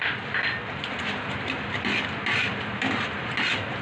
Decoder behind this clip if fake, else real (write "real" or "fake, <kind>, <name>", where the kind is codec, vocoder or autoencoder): real